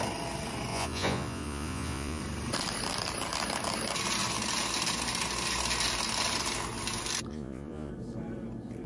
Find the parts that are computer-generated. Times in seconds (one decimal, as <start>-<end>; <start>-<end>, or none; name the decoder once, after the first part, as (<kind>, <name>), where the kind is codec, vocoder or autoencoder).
0.7-2.2 (vocoder, Vocos); 7.3-7.9